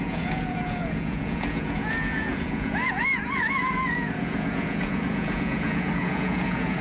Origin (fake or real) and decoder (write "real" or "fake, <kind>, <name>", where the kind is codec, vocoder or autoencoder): fake, vocoder, Vocos